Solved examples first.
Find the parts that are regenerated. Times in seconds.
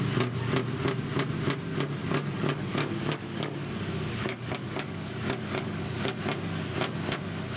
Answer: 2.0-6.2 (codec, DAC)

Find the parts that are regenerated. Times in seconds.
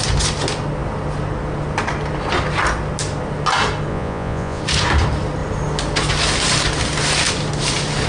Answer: 3.9-4.6 (vocoder, Vocos)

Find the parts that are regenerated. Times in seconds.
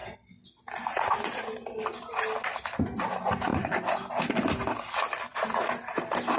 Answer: none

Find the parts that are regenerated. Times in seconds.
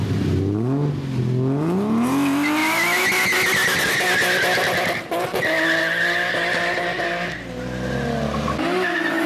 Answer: none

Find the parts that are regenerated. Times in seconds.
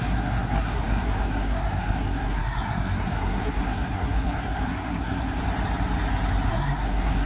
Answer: 0.0-5.4 (codec, SNAC); 6.5-7.3